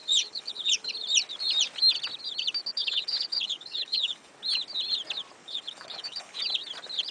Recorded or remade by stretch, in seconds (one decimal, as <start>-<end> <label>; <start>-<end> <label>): 0.0-0.9 remade; 0.9-2.6 recorded; 2.6-4.3 remade; 4.3-5.4 recorded; 5.4-6.4 remade; 6.4-7.1 recorded